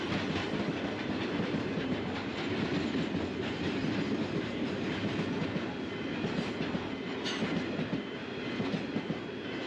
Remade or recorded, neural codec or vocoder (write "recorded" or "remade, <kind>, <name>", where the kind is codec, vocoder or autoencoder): recorded